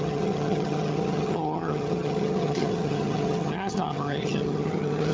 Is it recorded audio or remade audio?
remade